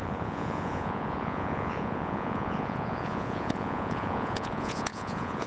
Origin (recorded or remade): remade